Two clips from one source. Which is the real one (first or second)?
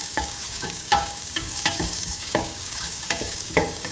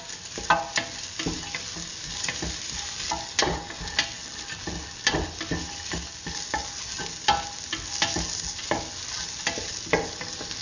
second